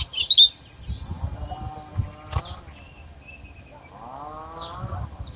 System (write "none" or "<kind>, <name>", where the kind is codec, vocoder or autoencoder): none